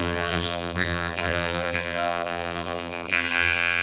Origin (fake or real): fake